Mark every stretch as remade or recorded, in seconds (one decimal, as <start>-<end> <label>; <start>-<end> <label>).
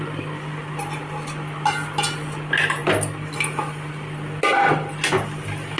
0.0-5.8 recorded